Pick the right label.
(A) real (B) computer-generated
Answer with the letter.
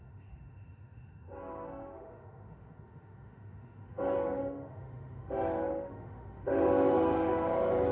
B